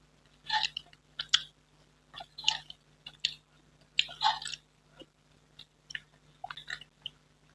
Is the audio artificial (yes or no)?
no